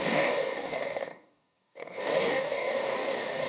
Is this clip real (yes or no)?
no